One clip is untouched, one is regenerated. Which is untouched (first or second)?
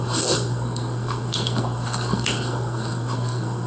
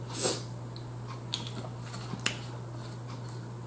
second